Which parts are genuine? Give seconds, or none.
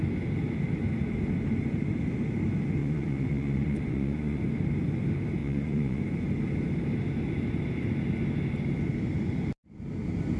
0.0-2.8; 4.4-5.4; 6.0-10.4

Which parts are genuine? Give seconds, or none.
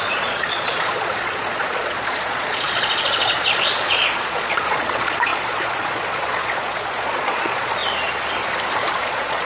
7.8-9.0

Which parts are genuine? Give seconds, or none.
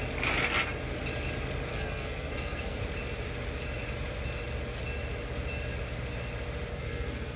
0.0-1.7; 2.8-6.7